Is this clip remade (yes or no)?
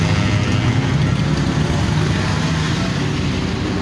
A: no